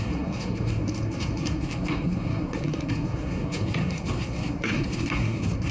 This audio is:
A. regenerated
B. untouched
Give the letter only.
A